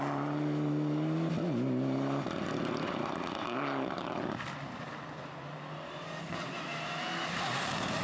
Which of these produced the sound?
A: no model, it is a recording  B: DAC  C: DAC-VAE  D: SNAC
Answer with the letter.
A